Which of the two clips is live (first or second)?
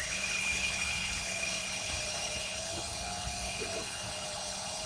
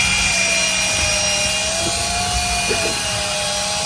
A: second